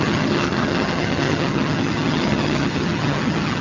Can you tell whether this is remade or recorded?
remade